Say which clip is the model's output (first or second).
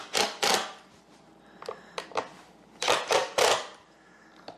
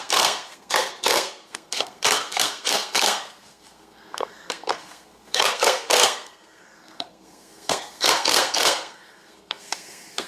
second